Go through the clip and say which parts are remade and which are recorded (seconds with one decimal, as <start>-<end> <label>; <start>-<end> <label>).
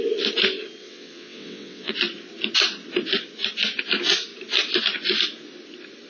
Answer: 0.0-0.8 recorded; 0.8-1.9 remade; 1.9-6.1 recorded